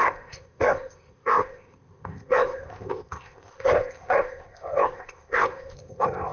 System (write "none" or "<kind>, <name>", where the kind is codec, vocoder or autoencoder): codec, ZipCodec